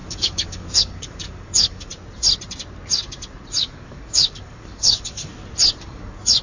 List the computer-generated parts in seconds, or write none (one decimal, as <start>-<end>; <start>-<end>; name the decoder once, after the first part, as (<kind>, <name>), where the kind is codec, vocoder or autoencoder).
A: 0.0-1.9 (codec, DAC); 3.6-5.3; 5.8-6.4